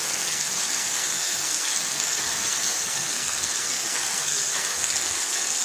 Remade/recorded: remade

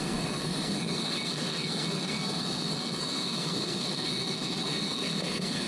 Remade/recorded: remade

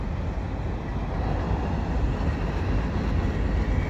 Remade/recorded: recorded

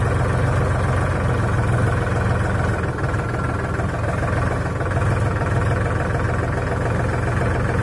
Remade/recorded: recorded